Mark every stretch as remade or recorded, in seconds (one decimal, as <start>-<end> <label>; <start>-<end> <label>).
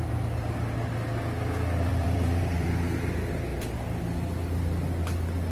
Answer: 0.0-1.9 recorded; 1.9-2.7 remade; 2.7-3.5 recorded; 3.5-4.0 remade; 4.0-5.5 recorded